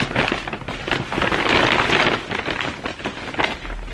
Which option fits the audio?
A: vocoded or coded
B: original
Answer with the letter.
B